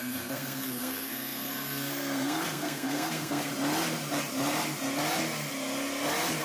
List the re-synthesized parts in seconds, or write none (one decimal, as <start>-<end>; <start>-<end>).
0.0-3.5